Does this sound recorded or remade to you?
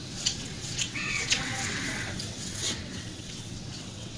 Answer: remade